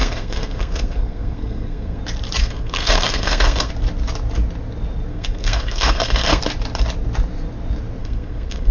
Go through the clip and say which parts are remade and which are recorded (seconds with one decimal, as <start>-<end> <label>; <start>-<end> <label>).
0.0-2.0 remade; 2.0-2.4 recorded; 2.4-3.7 remade; 3.7-5.1 recorded; 5.1-6.4 remade; 6.4-8.0 recorded; 8.0-8.7 remade